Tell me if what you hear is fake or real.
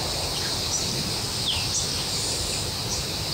real